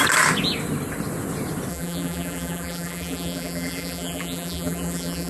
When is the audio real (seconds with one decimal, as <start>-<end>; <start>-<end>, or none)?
0.0-1.7